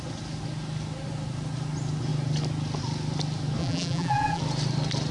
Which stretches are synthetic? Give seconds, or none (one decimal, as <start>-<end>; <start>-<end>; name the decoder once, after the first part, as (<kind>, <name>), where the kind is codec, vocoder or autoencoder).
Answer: 3.6-4.4 (vocoder, BigVGAN v2)